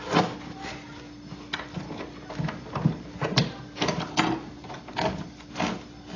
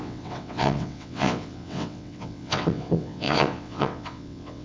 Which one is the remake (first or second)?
second